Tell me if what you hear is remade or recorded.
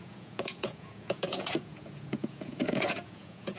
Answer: remade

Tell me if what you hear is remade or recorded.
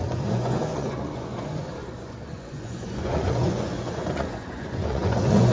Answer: remade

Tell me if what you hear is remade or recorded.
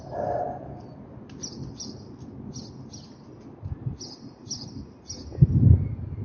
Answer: recorded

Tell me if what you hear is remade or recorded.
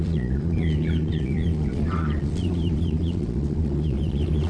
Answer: remade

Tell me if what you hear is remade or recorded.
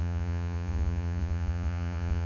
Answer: remade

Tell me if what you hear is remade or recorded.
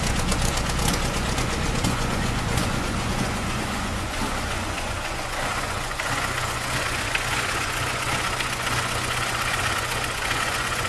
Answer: remade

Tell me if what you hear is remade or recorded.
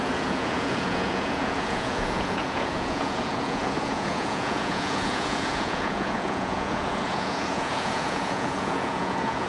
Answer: remade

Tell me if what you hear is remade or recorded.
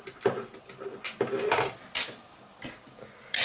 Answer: recorded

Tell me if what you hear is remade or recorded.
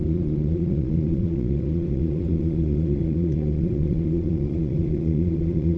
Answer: remade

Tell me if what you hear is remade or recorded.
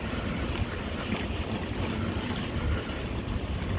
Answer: recorded